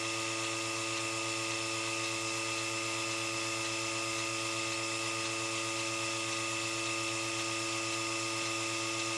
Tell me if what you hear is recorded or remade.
recorded